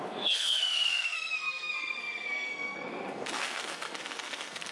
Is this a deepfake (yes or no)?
yes